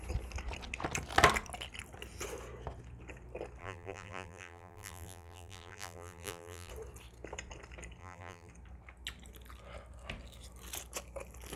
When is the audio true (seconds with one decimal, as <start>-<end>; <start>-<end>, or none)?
0.0-3.6; 6.7-8.0; 8.5-11.6